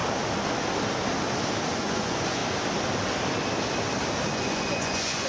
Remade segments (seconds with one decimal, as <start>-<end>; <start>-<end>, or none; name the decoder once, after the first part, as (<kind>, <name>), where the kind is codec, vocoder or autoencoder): 1.7-2.4 (vocoder, Vocos); 4.3-5.3